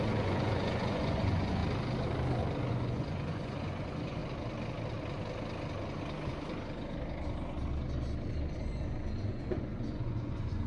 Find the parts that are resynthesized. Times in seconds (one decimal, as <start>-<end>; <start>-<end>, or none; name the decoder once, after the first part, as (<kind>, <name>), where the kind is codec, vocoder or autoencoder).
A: 0.0-1.6 (vocoder, Vocos); 2.7-4.2; 8.5-10.7